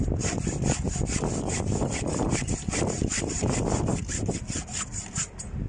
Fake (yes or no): no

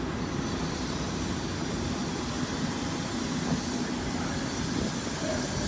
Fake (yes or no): no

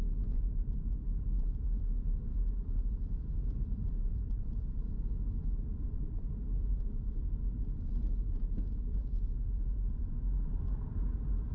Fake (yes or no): yes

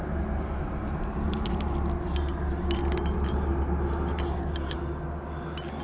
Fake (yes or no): no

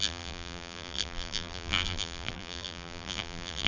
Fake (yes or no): yes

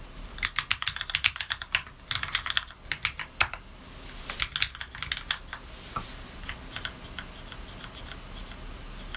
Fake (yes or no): no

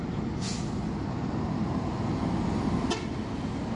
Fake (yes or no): no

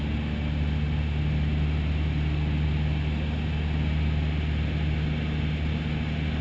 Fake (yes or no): no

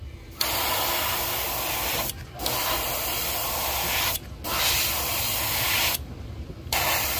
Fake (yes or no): no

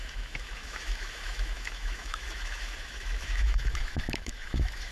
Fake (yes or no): yes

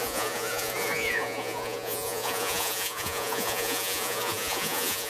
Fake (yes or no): yes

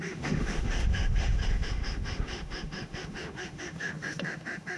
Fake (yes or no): yes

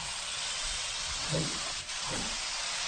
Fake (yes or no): yes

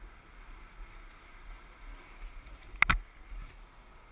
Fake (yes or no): no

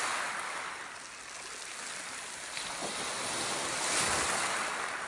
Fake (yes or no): no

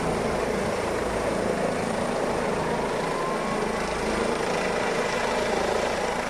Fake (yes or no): no